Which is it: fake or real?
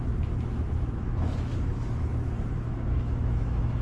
fake